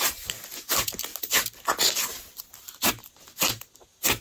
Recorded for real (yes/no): yes